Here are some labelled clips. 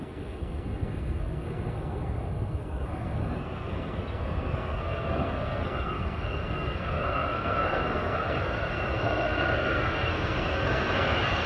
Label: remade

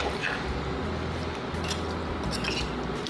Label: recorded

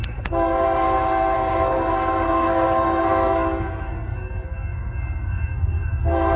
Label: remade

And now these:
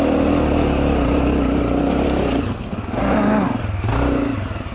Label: recorded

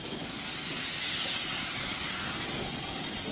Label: recorded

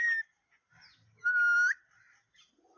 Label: recorded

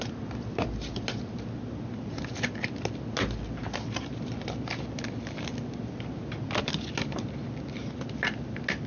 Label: recorded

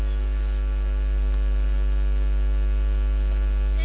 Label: recorded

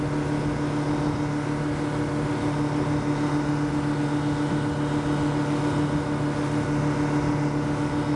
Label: recorded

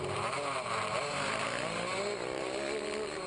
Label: recorded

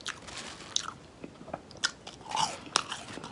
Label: recorded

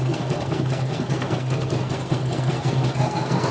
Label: remade